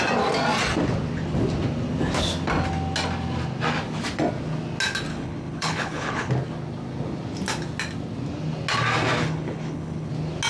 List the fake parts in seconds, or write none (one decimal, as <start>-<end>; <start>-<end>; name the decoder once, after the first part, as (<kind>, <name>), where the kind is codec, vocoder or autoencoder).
5.1-6.3 (codec, HILCodec); 9.2-10.1